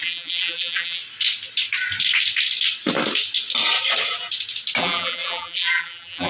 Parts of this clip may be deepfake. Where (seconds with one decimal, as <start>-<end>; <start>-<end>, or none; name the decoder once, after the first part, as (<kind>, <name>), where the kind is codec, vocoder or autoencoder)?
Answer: 0.0-1.0 (vocoder, BigVGAN v2); 4.8-6.3